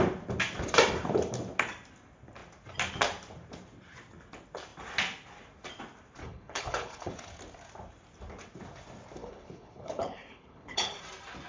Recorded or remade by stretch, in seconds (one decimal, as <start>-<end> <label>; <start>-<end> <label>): 0.0-6.2 recorded; 6.2-7.1 remade; 7.1-9.2 recorded; 9.2-11.0 remade; 11.0-11.5 recorded